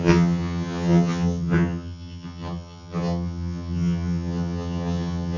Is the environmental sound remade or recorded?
remade